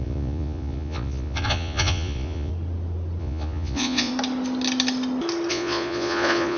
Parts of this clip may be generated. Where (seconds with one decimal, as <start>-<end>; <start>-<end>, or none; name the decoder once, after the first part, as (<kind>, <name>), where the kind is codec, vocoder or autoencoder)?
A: 0.0-2.5 (vocoder, Vocos); 3.2-4.1; 5.5-6.6